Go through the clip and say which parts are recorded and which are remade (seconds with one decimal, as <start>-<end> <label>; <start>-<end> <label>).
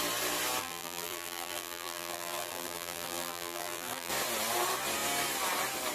0.0-0.6 recorded; 0.6-4.1 remade; 4.1-5.9 recorded